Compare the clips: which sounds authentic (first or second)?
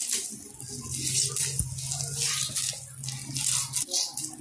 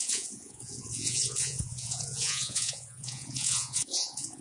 first